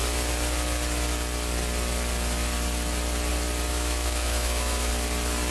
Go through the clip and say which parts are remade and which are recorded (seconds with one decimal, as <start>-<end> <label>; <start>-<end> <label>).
0.0-3.7 recorded; 3.7-4.9 remade; 4.9-5.5 recorded